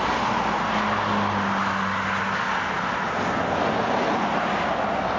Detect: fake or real real